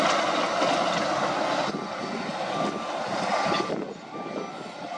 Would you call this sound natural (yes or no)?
yes